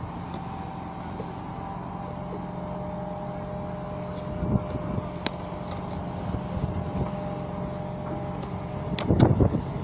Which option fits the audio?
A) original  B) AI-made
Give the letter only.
A